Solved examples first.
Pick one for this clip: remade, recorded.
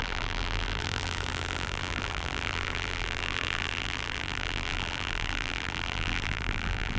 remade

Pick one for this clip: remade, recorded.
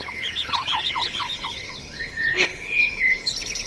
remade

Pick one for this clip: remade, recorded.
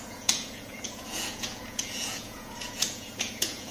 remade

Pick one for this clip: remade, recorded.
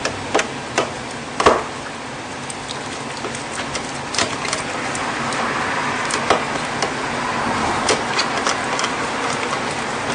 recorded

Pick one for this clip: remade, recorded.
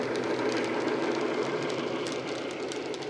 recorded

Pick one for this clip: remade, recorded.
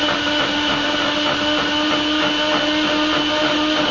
recorded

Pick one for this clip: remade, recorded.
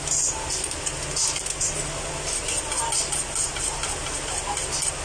recorded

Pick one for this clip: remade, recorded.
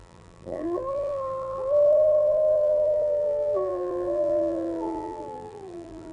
remade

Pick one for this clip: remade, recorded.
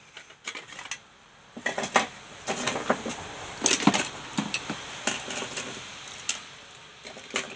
recorded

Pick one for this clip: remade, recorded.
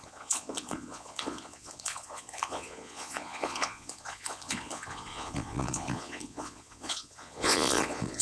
remade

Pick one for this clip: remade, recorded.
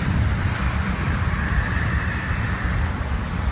remade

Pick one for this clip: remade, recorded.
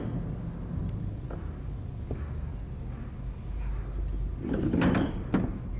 recorded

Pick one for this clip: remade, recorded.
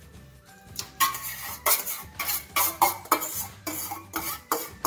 remade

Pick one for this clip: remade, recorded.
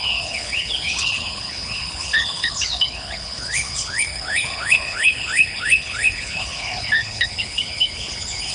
remade